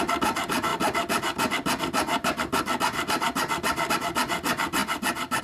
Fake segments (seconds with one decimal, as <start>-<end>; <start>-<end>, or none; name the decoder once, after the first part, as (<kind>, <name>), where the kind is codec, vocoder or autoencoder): 0.7-3.9 (vocoder, BigVGAN v2); 4.8-5.4

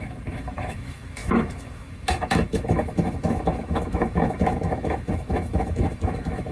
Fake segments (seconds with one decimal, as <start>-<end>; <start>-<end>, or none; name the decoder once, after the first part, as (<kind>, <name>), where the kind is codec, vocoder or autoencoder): 0.0-6.5 (autoencoder, DAC-VAE)

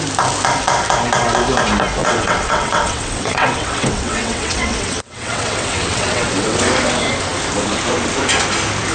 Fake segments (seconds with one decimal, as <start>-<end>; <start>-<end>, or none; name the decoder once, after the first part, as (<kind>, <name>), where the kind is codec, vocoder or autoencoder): 2.0-6.6 (vocoder, WaveNeXt)

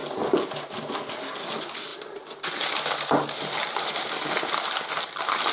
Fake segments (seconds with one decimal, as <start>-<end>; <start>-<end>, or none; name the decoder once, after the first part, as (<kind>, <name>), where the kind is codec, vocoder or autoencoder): none

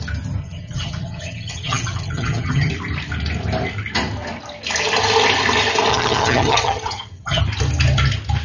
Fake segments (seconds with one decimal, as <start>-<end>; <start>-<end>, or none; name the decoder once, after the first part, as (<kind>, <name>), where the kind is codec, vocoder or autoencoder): 0.4-2.7 (vocoder, HiFi-GAN); 5.9-7.4

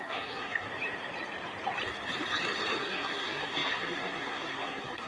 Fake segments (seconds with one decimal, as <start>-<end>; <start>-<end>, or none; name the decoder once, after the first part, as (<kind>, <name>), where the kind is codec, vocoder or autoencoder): 0.0-0.7 (codec, SNAC); 2.8-5.1

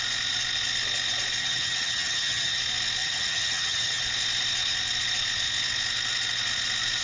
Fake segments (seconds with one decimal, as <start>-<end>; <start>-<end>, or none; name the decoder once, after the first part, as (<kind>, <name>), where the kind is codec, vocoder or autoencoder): 1.4-2.6 (vocoder, HiFi-GAN); 3.0-4.0

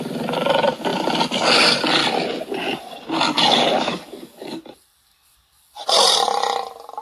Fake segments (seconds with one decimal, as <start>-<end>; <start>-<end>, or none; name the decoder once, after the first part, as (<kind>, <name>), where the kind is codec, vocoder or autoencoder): 3.9-4.6 (codec, DAC)